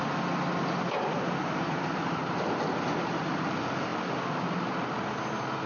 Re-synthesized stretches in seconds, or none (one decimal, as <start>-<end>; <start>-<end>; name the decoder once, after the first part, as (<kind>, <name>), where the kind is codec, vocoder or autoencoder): none